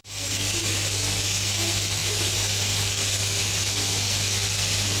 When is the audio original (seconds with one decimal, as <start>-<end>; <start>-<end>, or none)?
none